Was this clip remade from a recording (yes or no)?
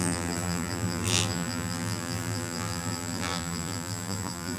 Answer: yes